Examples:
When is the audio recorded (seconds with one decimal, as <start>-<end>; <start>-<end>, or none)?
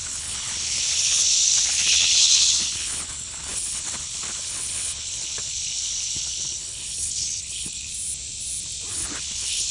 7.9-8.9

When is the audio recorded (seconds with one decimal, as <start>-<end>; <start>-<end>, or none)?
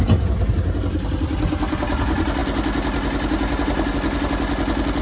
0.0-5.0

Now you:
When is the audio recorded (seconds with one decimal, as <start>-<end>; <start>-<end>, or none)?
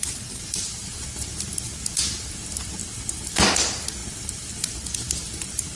0.0-2.8; 3.3-4.0; 5.3-5.8